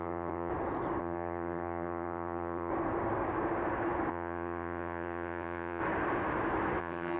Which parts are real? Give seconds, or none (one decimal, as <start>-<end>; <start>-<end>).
0.5-1.0; 2.7-4.1; 5.8-6.8